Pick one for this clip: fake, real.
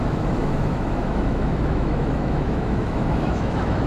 fake